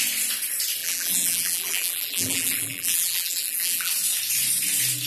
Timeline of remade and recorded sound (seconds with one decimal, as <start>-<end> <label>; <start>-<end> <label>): 0.0-0.8 recorded; 0.8-3.9 remade; 3.9-5.1 recorded